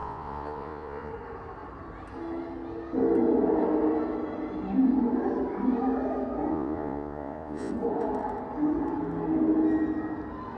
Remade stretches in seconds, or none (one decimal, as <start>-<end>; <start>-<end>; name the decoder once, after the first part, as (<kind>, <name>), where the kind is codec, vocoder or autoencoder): 0.0-1.1 (vocoder, Vocos); 6.5-7.7